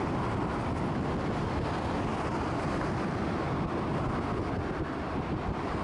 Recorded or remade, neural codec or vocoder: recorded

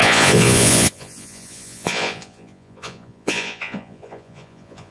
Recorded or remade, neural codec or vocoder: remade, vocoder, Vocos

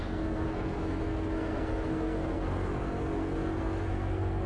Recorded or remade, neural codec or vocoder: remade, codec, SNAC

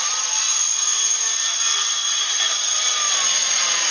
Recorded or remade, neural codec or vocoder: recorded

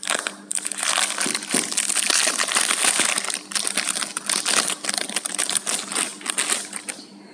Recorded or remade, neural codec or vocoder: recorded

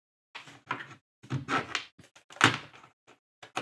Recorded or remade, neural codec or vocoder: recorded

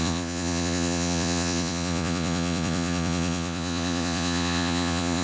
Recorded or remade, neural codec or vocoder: remade, vocoder, Vocos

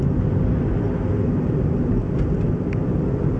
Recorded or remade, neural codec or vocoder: recorded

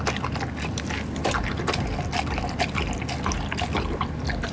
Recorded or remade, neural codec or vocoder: recorded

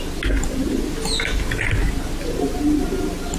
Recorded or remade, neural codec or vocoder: recorded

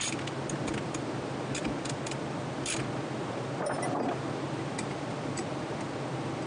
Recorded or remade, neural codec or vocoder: recorded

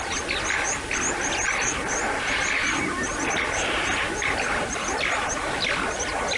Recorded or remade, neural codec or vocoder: recorded